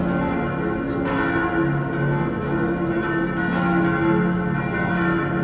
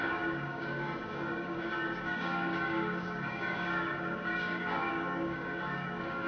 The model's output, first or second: second